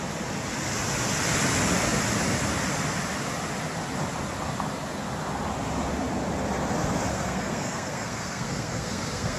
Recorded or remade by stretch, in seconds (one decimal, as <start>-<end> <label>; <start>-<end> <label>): 0.0-7.1 recorded; 7.1-9.4 remade